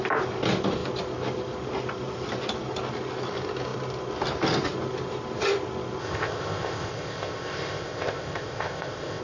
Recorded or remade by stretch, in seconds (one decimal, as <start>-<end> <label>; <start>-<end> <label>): 0.0-6.0 recorded; 6.0-9.2 remade